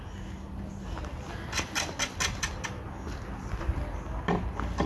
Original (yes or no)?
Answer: yes